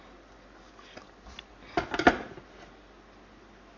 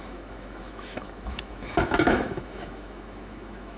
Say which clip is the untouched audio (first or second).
first